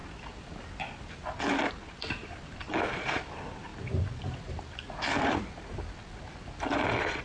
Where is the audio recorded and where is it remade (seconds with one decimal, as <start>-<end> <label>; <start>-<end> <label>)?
0.0-3.7 recorded; 3.7-6.3 remade; 6.3-7.2 recorded